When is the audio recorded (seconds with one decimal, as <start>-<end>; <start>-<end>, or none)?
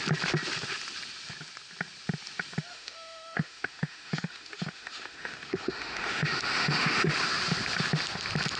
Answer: 0.0-2.7; 7.1-8.6